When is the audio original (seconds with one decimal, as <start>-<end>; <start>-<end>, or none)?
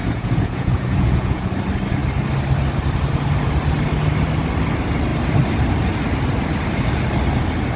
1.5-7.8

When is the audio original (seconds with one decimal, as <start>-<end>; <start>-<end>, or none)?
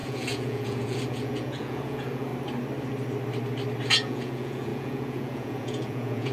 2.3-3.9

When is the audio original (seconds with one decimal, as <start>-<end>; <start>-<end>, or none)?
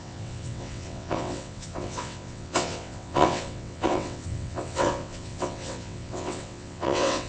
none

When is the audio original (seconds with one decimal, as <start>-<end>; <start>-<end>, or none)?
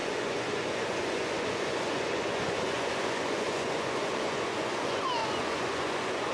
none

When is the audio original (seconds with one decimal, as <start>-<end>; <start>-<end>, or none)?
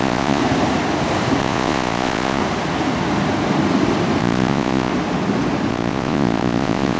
0.4-1.4; 2.4-4.2; 4.9-5.7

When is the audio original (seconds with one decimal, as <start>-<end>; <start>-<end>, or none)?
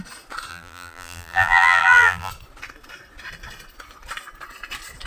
0.0-0.5; 2.3-5.1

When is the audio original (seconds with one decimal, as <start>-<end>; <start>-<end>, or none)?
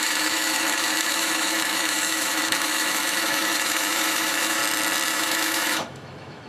4.6-5.1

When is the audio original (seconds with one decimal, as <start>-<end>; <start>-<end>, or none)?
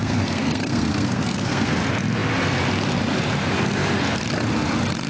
1.8-5.1